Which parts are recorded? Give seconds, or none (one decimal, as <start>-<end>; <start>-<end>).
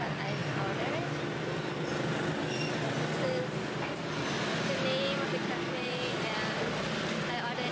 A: 0.0-7.7